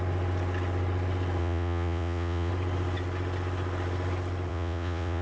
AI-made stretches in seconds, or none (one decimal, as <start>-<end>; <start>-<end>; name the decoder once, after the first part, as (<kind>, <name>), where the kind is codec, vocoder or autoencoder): 1.4-2.5 (vocoder, Vocos); 4.5-5.2